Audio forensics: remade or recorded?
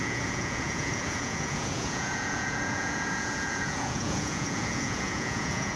remade